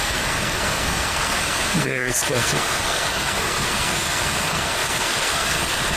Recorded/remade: remade